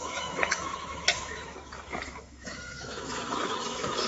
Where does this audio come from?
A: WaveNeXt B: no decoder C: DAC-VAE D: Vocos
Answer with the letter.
C